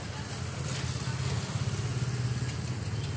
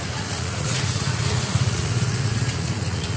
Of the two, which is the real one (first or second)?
first